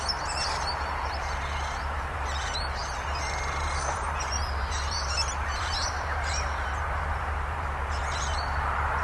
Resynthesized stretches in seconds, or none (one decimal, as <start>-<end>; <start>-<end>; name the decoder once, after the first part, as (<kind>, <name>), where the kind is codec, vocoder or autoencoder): 0.0-9.0 (vocoder, BigVGAN v2)